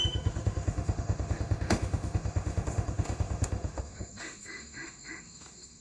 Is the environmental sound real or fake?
fake